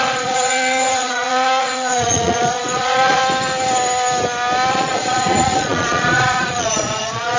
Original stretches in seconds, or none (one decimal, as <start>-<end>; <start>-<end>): 3.2-4.7